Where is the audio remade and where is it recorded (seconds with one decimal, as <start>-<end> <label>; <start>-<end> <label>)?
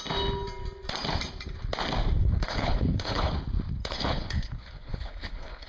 0.0-2.2 recorded; 2.2-3.3 remade; 3.3-3.8 recorded; 3.8-5.7 remade